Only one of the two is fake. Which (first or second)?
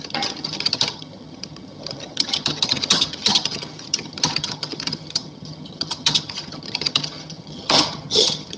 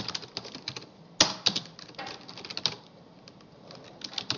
first